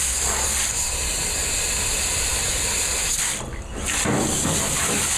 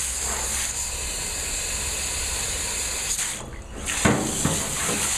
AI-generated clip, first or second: first